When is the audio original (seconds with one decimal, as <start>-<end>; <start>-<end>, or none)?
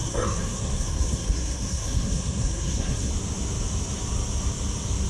3.1-5.1